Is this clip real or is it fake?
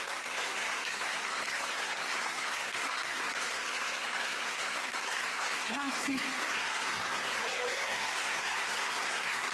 fake